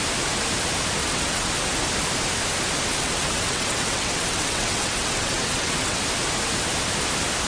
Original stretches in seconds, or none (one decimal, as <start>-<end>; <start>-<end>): 0.0-1.0; 1.5-2.9; 6.0-7.5